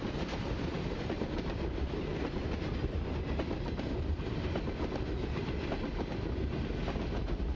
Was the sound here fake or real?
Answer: real